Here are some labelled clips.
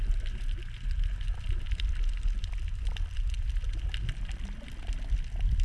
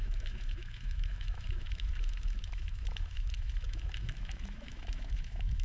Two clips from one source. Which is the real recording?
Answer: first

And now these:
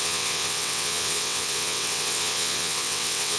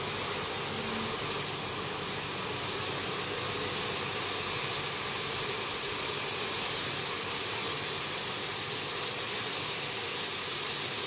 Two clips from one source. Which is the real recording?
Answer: second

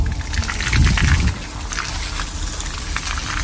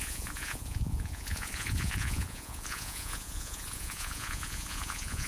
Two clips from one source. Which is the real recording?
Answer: first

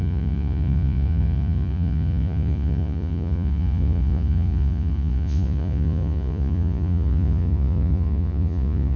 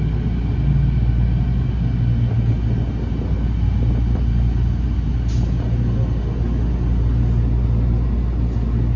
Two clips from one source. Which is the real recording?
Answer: second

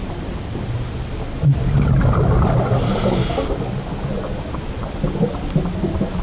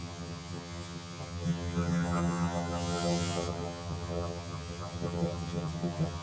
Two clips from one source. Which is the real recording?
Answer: first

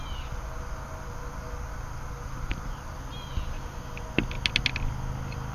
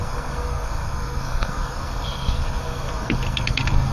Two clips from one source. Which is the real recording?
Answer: first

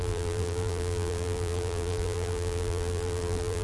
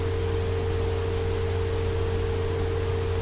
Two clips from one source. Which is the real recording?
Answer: second